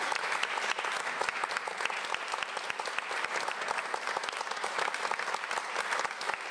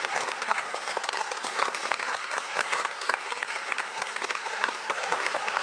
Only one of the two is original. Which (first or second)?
first